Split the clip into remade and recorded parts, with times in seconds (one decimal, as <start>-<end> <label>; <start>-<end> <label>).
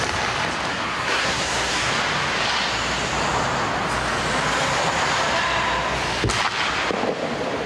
0.0-0.7 recorded; 0.7-1.9 remade; 1.9-7.7 recorded